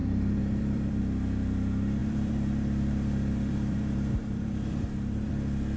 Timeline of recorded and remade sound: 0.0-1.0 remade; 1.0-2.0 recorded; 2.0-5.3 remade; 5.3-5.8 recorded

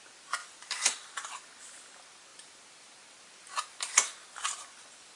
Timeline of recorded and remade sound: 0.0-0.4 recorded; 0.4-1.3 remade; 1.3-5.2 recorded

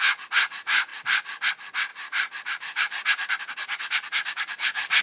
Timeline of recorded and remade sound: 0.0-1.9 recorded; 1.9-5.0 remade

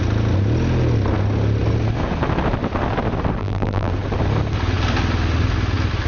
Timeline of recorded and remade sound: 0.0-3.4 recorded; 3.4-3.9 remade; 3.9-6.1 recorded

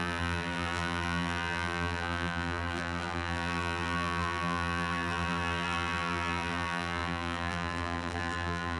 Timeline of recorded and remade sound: 0.0-8.8 remade